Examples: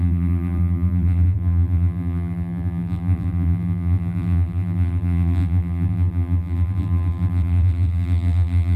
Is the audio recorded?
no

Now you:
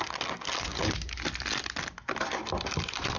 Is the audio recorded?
yes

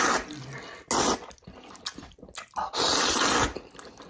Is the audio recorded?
yes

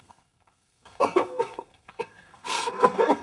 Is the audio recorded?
no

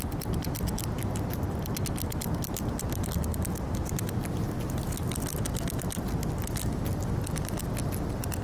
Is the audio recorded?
yes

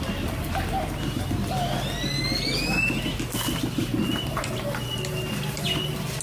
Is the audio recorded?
yes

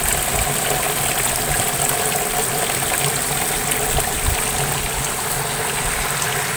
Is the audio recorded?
yes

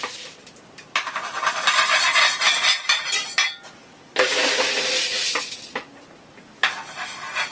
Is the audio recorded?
yes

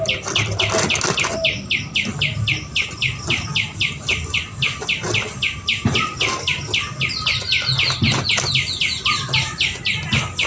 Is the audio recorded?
yes